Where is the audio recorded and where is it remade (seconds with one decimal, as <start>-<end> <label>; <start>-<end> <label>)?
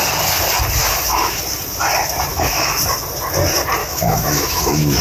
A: 0.0-0.8 recorded; 0.8-1.4 remade; 1.4-2.3 recorded; 2.3-2.8 remade; 2.8-3.8 recorded; 3.8-5.0 remade